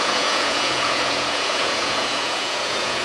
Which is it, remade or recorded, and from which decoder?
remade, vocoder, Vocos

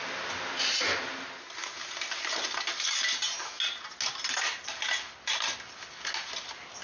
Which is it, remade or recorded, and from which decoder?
recorded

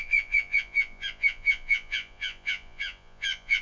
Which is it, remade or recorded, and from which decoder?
remade, vocoder, Vocos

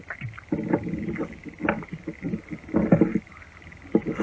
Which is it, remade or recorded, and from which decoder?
recorded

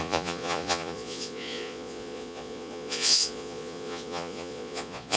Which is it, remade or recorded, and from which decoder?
remade, vocoder, Vocos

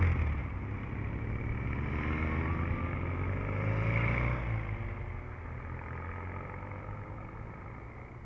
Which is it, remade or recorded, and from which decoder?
recorded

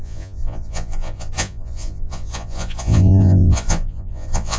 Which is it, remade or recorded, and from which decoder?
remade, vocoder, Vocos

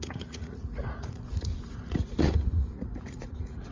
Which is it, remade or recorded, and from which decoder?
remade, vocoder, Vocos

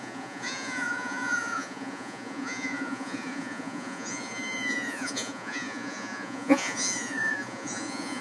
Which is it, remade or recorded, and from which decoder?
remade, vocoder, Vocos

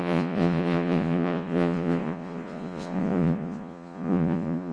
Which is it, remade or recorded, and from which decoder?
remade, vocoder, Vocos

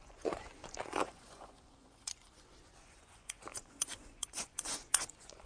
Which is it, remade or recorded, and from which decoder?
remade, vocoder, Vocos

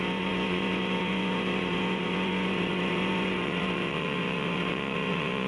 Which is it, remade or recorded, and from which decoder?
remade, vocoder, Vocos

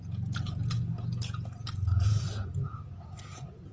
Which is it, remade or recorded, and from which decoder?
remade, vocoder, Vocos